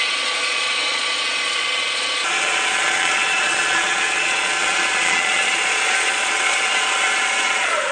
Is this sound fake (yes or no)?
yes